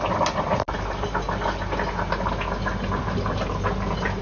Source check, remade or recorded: recorded